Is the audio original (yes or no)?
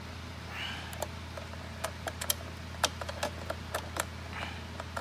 yes